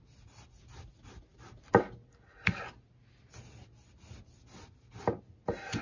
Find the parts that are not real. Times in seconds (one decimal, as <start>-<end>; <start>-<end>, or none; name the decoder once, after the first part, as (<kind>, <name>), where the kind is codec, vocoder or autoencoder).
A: none